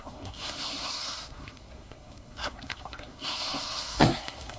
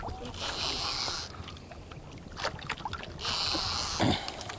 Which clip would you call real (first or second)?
second